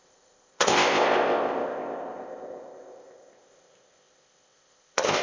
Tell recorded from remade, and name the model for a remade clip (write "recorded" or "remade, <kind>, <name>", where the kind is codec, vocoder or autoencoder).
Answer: remade, codec, ZipCodec